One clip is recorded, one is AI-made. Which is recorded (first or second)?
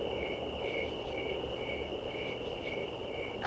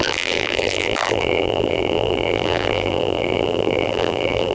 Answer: first